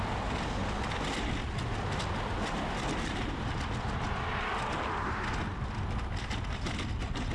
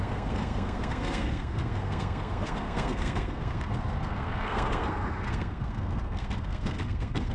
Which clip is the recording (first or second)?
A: first